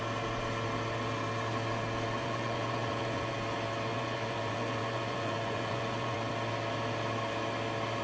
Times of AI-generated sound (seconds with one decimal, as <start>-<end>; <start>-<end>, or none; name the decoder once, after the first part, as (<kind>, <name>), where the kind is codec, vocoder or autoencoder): 2.2-3.3 (vocoder, Vocos); 3.9-6.3